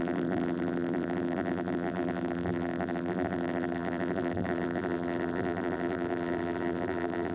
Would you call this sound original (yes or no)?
no